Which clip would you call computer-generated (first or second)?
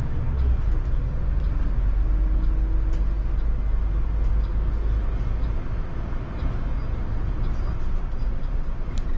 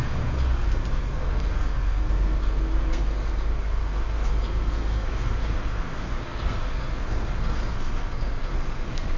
second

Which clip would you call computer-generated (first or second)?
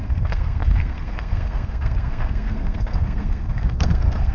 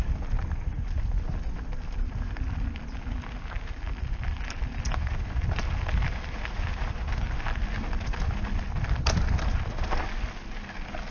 first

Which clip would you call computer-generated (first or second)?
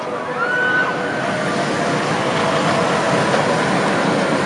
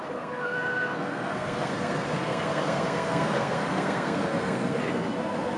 second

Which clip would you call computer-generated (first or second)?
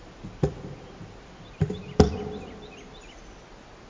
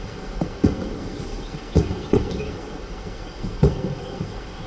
second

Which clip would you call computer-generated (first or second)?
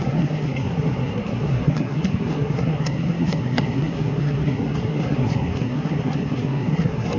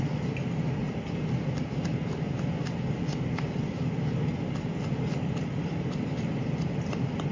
first